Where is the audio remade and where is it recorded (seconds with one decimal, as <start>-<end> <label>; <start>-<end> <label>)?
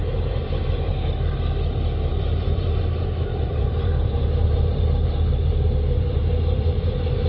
0.0-0.9 remade; 0.9-2.1 recorded; 2.1-2.8 remade; 2.8-3.3 recorded; 3.3-7.3 remade